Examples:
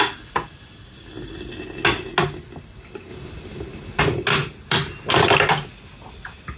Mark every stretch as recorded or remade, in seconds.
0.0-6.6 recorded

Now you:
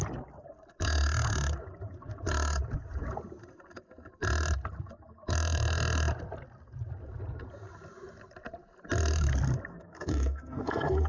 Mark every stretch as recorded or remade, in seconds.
0.0-9.7 recorded; 9.7-11.1 remade

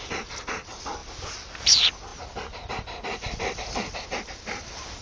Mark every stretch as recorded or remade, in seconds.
0.0-5.0 recorded

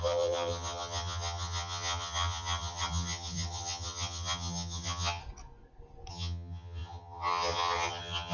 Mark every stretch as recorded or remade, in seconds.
0.0-5.2 remade; 5.2-6.1 recorded; 6.1-8.3 remade

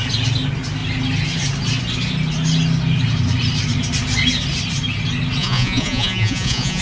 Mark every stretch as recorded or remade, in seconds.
0.0-5.4 recorded; 5.4-6.8 remade

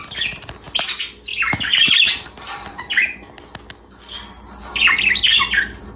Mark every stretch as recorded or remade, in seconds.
0.0-6.0 recorded

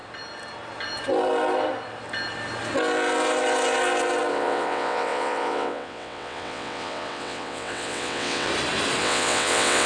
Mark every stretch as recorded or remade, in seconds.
0.0-4.3 recorded; 4.3-8.5 remade; 8.5-9.0 recorded; 9.0-9.9 remade